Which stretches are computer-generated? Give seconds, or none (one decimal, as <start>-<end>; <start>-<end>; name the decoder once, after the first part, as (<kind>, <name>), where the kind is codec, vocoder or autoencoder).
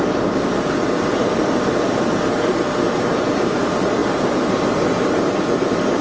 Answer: 0.0-6.0 (vocoder, BigVGAN v2)